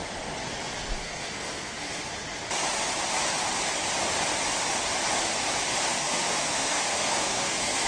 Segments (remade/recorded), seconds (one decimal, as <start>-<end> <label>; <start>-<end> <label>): 0.0-1.0 recorded; 1.0-2.1 remade; 2.1-5.9 recorded; 5.9-7.9 remade